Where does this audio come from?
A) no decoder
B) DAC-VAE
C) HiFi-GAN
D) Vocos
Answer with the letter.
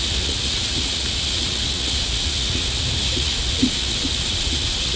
D